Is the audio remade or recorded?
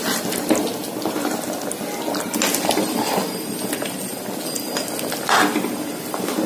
recorded